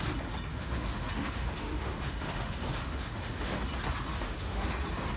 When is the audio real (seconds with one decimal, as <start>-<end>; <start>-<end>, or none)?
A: 0.0-0.5; 3.6-4.1; 4.7-5.2